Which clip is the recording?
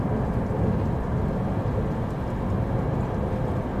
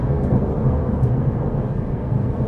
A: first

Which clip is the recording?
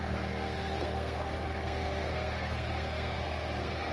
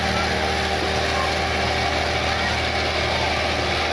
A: second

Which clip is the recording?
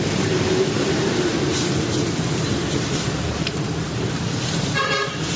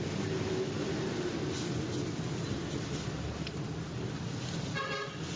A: second